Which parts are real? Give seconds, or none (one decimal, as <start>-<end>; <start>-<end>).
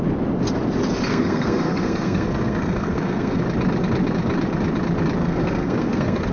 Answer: 0.0-1.1; 3.4-5.2